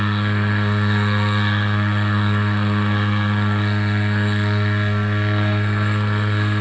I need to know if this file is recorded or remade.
remade